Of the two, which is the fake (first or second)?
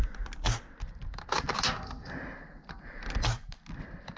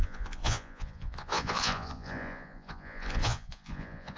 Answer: second